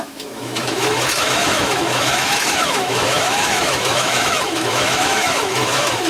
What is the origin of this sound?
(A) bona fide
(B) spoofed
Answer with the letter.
B